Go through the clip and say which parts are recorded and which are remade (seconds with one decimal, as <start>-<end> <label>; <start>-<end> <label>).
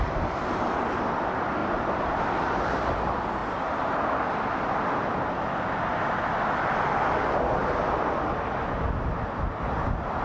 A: 0.0-3.4 remade; 3.4-4.3 recorded; 4.3-5.9 remade; 5.9-9.6 recorded; 9.6-10.2 remade